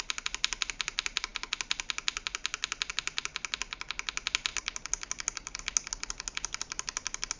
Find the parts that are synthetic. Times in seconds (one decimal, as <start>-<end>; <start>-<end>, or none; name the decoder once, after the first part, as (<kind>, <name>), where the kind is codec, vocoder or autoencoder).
none